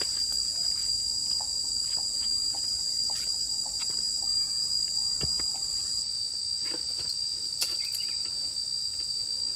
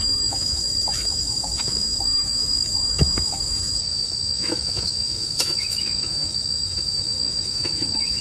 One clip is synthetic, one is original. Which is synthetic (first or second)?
second